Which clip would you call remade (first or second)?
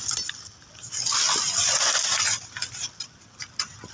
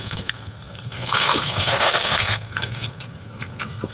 second